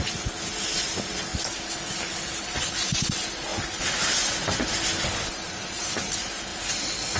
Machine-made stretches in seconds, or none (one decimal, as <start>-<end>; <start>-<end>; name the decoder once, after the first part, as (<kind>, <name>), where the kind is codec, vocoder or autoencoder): none